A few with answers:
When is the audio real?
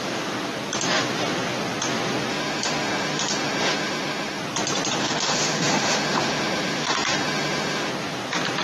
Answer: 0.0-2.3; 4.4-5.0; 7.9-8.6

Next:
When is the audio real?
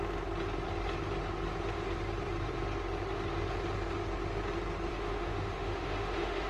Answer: 0.0-4.9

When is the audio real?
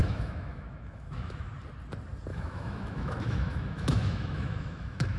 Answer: 1.5-2.3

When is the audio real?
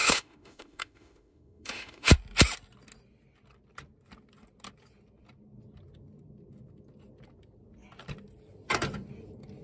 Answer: 2.1-9.6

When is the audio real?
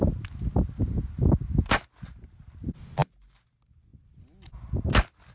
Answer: 0.0-5.3